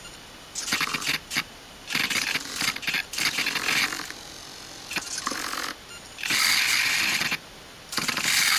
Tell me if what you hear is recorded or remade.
recorded